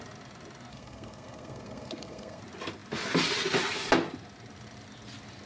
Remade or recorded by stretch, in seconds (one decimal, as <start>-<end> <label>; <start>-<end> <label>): 0.0-0.7 recorded; 0.7-2.4 remade; 2.4-5.5 recorded